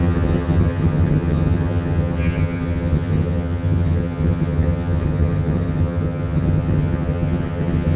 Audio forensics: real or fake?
fake